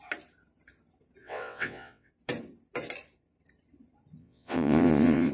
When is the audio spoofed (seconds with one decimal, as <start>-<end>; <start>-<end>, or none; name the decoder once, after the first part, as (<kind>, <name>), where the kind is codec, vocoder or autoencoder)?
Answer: 1.2-2.1 (vocoder, WaveNeXt); 4.2-5.3